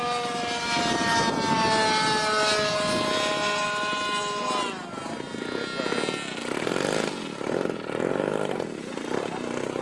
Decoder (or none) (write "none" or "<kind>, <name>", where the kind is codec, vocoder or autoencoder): none